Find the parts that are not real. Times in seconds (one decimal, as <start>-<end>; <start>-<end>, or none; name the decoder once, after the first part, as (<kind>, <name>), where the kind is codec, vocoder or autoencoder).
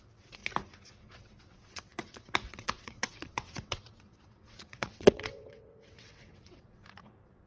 0.0-0.4 (vocoder, WaveNeXt); 0.9-7.5